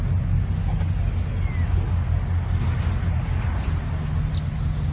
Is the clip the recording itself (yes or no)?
yes